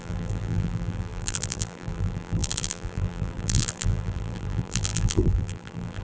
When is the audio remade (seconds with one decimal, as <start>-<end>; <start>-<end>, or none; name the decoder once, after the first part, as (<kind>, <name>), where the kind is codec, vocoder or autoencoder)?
0.0-6.0 (vocoder, BigVGAN v2)